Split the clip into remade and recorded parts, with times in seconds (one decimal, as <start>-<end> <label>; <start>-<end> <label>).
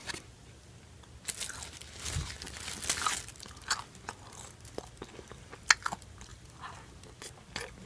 0.0-0.7 remade; 0.7-6.3 recorded; 6.3-7.0 remade; 7.0-7.9 recorded